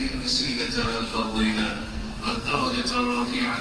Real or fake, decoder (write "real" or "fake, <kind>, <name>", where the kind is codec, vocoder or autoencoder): fake, codec, SNAC